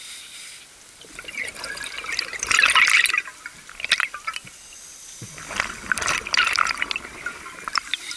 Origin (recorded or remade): recorded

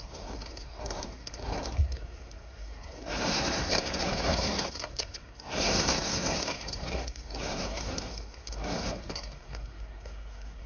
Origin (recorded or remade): remade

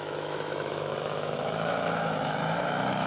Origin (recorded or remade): remade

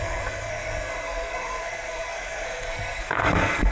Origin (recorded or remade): remade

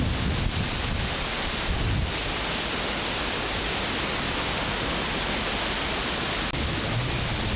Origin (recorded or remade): recorded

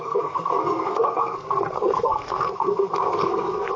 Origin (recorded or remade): remade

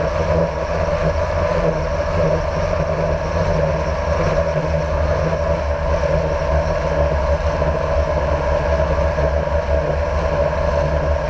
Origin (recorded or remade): recorded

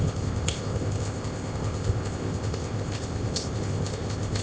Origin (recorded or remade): remade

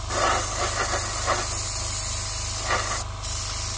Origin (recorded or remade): recorded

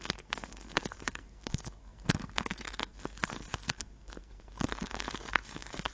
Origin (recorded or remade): remade